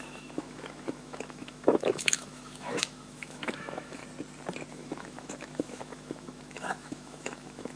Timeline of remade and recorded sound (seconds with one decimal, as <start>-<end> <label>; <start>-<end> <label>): 0.0-4.0 remade; 4.0-4.7 recorded; 4.7-7.8 remade